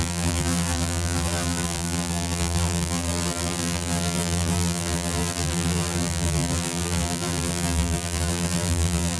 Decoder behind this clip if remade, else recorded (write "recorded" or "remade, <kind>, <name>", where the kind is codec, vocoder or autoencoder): remade, vocoder, BigVGAN v2